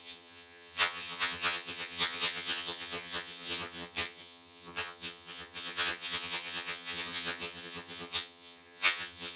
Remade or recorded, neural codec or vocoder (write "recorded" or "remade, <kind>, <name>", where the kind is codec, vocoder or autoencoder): remade, vocoder, HiFi-GAN